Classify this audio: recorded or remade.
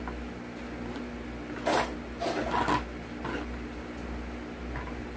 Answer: recorded